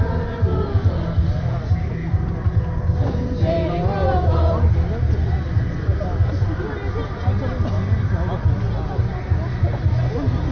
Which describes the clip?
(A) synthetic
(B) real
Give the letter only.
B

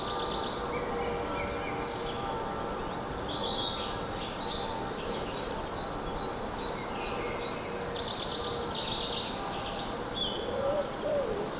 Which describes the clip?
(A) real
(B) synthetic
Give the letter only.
A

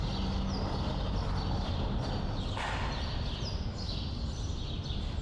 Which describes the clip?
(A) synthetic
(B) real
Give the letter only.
B